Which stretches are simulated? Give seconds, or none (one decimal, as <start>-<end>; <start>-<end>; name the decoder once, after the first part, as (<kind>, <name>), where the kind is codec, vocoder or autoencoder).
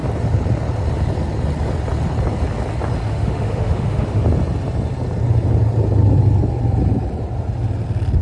3.1-4.2 (autoencoder, DAC-VAE)